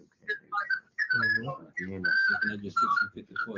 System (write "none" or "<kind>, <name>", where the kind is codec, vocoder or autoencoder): none